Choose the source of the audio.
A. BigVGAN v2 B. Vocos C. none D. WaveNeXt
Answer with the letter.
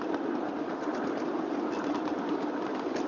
C